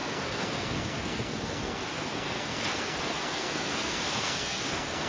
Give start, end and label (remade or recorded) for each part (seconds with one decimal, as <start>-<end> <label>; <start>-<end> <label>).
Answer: 0.0-5.1 remade